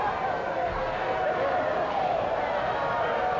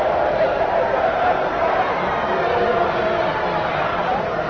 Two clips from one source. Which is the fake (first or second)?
second